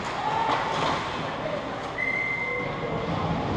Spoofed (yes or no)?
no